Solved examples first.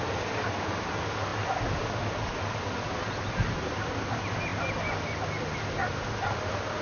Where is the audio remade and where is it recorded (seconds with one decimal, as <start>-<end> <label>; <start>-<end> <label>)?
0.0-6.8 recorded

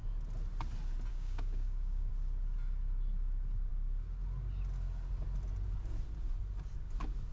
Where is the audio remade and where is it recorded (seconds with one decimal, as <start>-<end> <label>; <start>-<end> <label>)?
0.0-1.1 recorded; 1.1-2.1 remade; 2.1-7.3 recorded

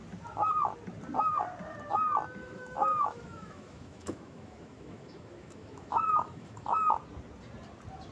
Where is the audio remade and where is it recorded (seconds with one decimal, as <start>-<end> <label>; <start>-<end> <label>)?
0.0-2.4 recorded; 2.4-6.9 remade; 6.9-8.1 recorded

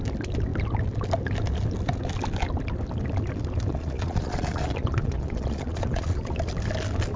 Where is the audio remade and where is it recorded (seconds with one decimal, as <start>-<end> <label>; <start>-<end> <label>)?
0.0-3.7 recorded; 3.7-6.2 remade; 6.2-7.2 recorded

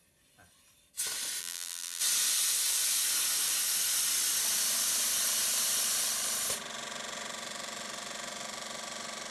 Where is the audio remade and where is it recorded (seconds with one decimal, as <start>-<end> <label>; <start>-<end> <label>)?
0.0-1.4 recorded; 1.4-2.0 remade; 2.0-9.3 recorded